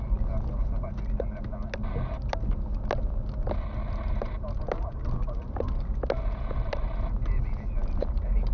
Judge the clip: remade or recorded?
recorded